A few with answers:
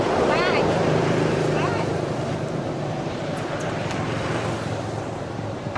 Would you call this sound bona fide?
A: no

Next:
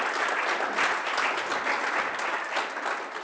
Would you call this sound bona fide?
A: yes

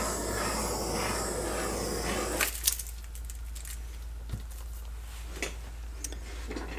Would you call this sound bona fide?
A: yes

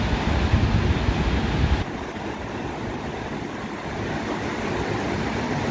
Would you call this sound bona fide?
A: yes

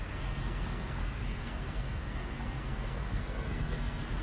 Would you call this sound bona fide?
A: no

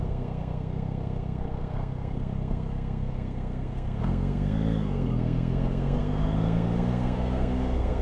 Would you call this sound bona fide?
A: no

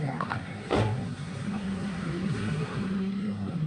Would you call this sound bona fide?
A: no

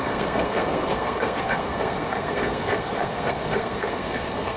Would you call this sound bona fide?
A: no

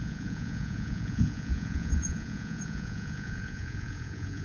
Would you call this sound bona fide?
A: no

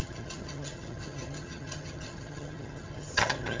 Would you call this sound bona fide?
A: no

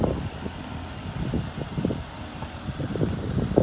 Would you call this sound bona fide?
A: yes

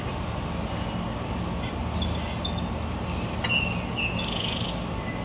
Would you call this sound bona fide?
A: yes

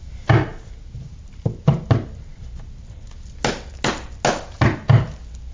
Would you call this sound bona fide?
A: yes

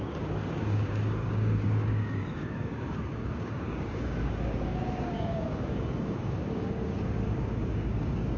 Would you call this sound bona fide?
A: no